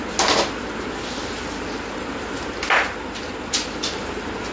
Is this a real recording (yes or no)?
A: yes